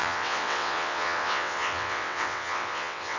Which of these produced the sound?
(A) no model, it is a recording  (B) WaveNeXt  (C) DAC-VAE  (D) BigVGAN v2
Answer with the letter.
B